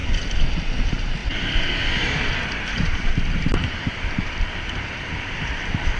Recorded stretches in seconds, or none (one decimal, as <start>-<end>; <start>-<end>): 1.2-1.9